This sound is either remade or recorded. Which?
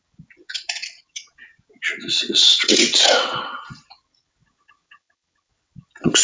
remade